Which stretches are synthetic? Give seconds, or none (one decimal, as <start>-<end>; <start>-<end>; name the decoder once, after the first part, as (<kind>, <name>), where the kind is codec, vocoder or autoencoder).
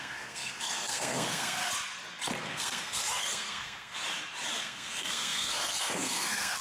0.0-1.6 (codec, SNAC); 2.4-4.0; 4.6-6.6